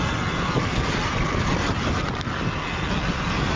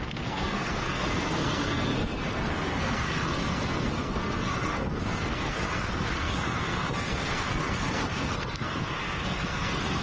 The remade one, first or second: second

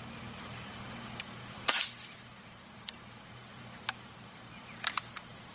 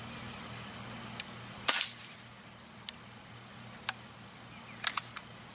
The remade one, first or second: first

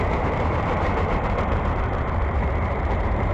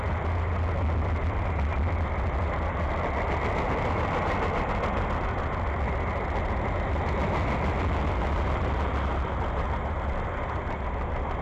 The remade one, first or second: first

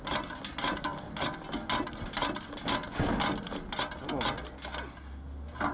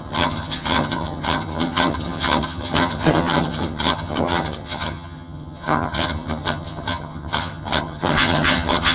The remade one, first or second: second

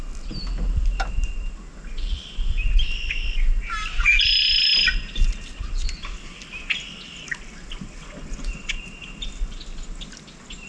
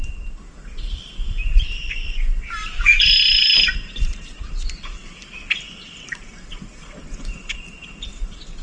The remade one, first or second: second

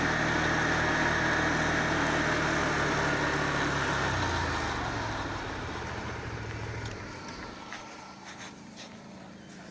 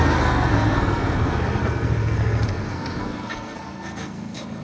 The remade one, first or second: second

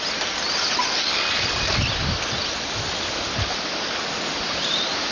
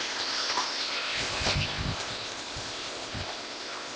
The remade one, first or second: second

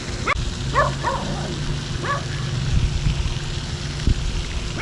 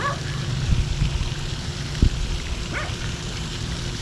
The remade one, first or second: second